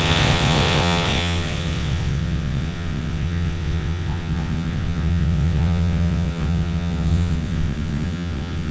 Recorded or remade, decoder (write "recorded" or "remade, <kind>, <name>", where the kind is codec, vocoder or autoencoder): remade, vocoder, WaveNeXt